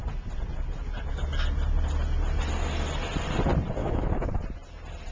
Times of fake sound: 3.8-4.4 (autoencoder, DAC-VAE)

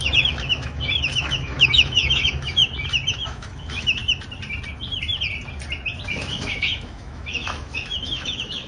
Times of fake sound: 0.0-2.6 (autoencoder, DAC-VAE); 3.1-4.0; 6.1-8.7

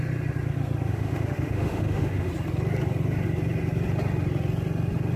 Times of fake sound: 0.9-2.3 (autoencoder, DAC-VAE)

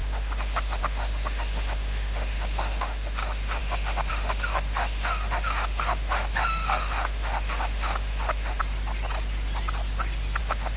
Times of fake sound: 0.0-8.6 (autoencoder, DAC-VAE); 10.4-10.8

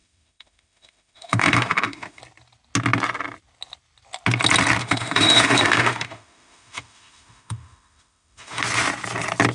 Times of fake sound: 0.0-2.2 (autoencoder, DAC-VAE); 4.8-8.6

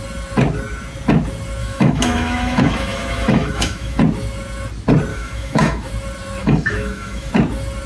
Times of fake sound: 1.6-4.0 (autoencoder, DAC-VAE); 5.1-5.9; 6.4-7.3

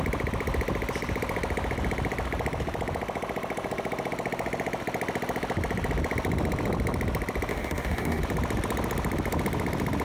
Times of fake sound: 7.5-8.2 (autoencoder, DAC-VAE)